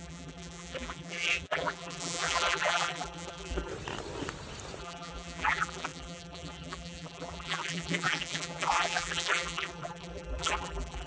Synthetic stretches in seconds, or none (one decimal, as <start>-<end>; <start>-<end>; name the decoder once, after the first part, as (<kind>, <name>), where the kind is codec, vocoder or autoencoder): 0.0-3.7 (vocoder, BigVGAN v2); 4.8-11.1